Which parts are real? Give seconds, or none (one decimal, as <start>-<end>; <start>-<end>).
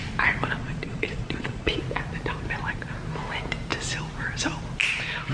0.0-0.6; 1.8-5.3